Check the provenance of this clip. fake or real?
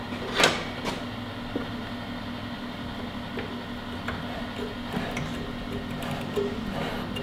real